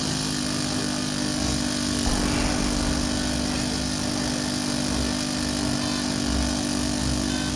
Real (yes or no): yes